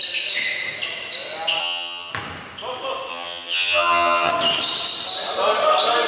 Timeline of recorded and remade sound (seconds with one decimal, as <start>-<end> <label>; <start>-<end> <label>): 0.0-1.6 recorded; 1.6-2.1 remade; 2.1-3.1 recorded; 3.1-4.3 remade; 4.3-6.1 recorded